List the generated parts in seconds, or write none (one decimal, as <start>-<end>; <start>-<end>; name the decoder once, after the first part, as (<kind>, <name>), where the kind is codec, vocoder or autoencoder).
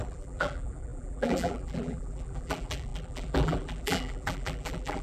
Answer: 0.0-5.0 (vocoder, BigVGAN v2)